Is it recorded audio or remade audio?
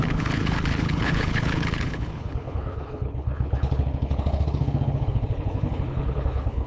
remade